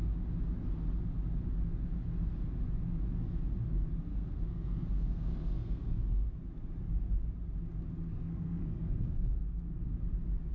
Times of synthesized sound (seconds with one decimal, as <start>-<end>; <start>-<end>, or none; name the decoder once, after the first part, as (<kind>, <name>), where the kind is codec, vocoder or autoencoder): 4.1-6.3 (codec, SNAC); 8.1-9.7